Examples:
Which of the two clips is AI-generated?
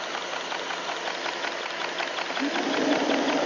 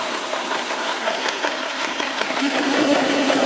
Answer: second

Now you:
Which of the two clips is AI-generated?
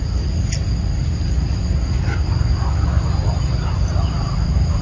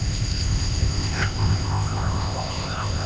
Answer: second